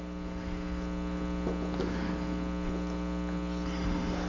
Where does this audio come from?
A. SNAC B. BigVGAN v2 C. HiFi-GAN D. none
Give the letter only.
D